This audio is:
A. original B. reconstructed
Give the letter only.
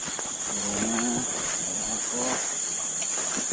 A